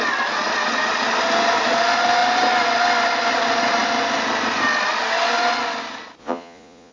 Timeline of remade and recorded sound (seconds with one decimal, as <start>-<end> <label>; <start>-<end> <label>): 0.0-6.2 recorded; 6.2-6.9 remade